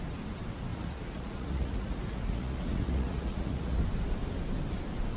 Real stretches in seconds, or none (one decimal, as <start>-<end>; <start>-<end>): 0.0-0.7; 3.8-5.2